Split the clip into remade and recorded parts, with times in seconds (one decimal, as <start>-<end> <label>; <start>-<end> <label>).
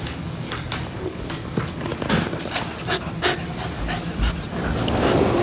0.0-1.9 remade; 1.9-5.4 recorded